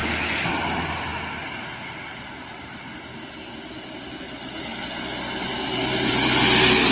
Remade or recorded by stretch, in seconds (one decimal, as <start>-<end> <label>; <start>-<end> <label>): 0.0-6.9 recorded